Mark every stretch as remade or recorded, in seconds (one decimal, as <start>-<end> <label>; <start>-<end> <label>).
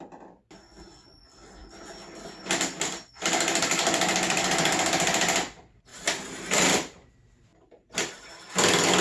0.0-7.5 recorded; 7.5-8.3 remade; 8.3-9.0 recorded